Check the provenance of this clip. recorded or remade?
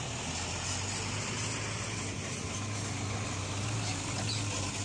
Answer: recorded